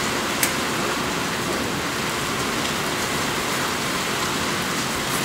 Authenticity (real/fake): real